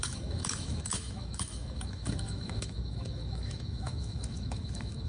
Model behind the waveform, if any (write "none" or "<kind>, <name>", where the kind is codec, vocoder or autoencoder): autoencoder, DAC-VAE